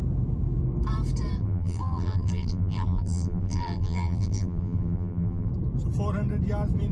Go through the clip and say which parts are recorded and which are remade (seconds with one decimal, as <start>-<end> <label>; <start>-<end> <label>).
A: 0.0-1.4 recorded; 1.4-5.5 remade; 5.5-6.9 recorded